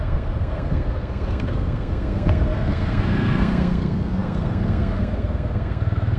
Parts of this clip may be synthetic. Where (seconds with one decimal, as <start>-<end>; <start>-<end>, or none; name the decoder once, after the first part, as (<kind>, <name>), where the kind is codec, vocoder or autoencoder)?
0.0-6.2 (codec, SNAC)